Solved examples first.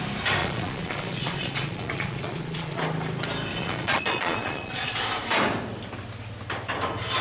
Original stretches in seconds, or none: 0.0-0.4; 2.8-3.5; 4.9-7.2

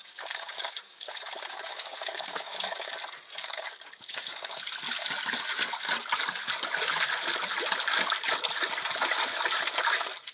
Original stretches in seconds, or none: 2.9-3.4; 4.6-10.3